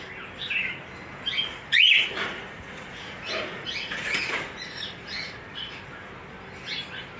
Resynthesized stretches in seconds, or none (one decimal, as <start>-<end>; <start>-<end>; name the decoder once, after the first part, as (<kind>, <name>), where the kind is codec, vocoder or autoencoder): 1.5-5.8 (vocoder, Vocos)